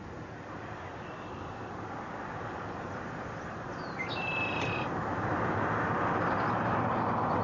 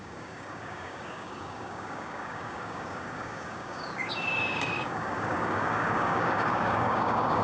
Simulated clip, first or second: second